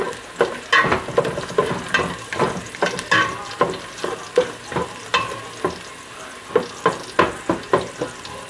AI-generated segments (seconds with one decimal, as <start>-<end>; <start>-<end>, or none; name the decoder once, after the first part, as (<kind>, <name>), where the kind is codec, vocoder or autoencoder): none